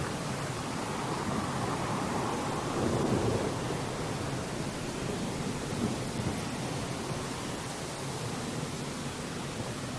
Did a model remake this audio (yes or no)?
no